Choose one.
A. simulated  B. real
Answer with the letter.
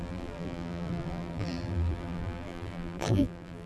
A